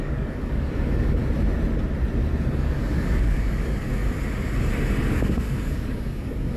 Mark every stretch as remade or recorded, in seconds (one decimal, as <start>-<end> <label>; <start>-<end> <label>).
0.0-1.2 remade; 1.2-2.5 recorded; 2.5-4.0 remade; 4.0-5.1 recorded; 5.1-6.6 remade